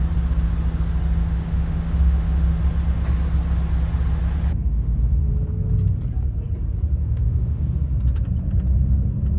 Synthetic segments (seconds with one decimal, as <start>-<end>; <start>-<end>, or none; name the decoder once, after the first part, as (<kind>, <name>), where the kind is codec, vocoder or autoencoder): 1.2-2.6 (autoencoder, DAC-VAE); 4.5-5.2; 7.0-7.7